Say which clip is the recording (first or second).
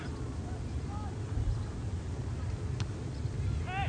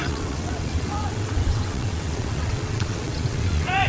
first